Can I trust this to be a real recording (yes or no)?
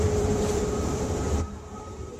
no